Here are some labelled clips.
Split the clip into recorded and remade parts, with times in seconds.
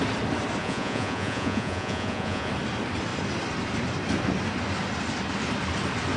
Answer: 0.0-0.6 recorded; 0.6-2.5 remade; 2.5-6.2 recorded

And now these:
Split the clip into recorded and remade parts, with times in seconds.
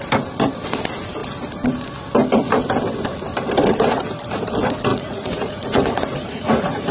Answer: 0.0-4.9 recorded; 4.9-6.9 remade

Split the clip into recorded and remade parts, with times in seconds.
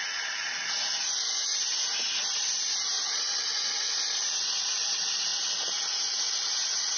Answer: 0.0-1.5 remade; 1.5-3.0 recorded; 3.0-7.0 remade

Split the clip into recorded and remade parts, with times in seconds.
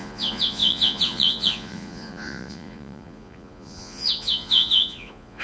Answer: 0.0-5.4 remade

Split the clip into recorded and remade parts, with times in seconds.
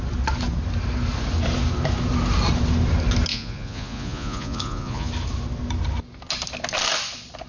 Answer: 0.0-3.3 recorded; 3.3-5.1 remade; 5.1-7.5 recorded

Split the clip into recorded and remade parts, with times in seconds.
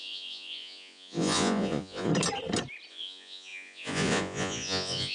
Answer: 0.0-2.1 remade; 2.1-2.9 recorded; 2.9-5.1 remade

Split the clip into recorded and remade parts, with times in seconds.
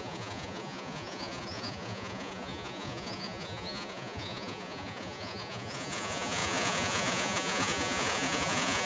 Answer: 0.0-8.9 remade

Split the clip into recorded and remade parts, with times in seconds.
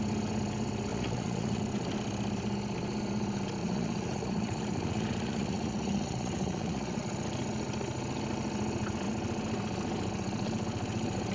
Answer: 0.0-0.9 recorded; 0.9-1.6 remade; 1.6-3.6 recorded; 3.6-7.0 remade; 7.0-11.3 recorded